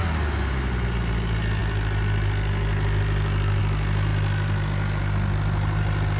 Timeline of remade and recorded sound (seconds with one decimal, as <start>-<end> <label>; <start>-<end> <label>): 0.0-6.2 recorded